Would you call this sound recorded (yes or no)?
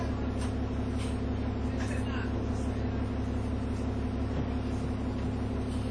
yes